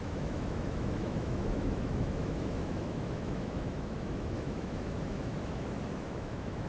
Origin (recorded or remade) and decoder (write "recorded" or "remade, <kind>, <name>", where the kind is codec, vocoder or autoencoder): remade, autoencoder, DAC-VAE